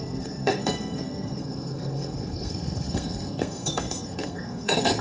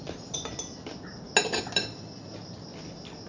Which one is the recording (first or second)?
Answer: second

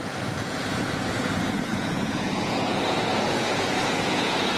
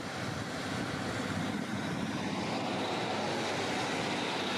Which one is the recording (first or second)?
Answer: second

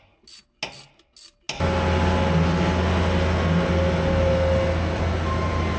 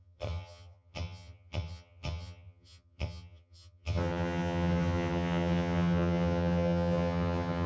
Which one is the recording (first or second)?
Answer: first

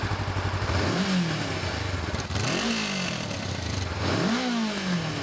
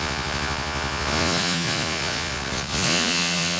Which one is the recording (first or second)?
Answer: first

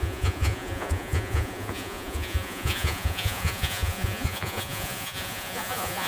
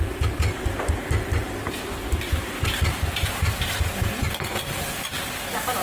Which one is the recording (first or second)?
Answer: second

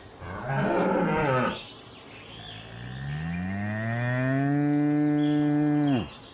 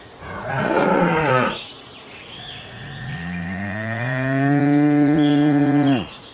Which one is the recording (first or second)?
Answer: first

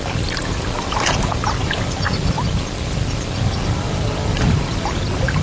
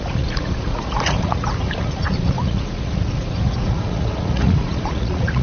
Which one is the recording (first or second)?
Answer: first